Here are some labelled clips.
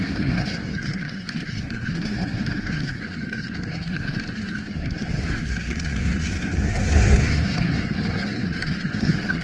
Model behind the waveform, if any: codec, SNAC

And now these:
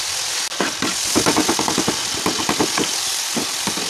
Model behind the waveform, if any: none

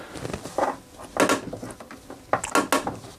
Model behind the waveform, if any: none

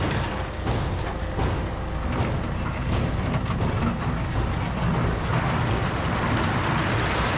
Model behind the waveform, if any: none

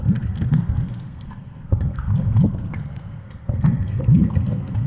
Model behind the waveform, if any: codec, SNAC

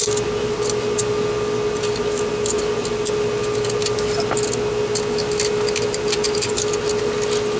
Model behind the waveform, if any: none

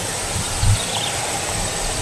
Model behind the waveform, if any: none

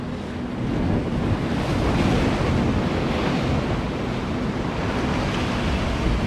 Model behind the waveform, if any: none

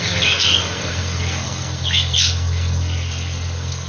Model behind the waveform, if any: codec, SNAC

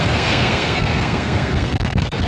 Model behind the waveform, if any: codec, SNAC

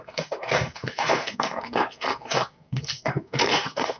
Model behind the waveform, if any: codec, SNAC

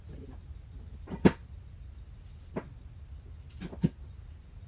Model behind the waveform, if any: none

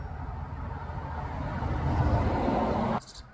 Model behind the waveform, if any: none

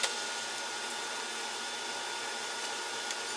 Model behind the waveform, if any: none